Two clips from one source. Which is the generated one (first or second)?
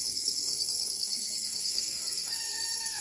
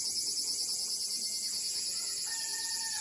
first